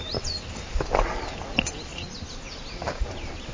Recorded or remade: recorded